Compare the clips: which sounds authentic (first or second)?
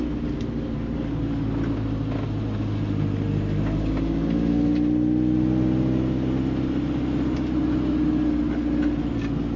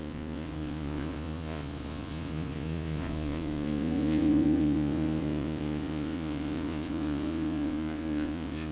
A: first